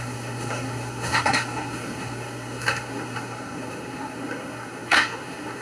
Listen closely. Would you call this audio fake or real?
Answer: fake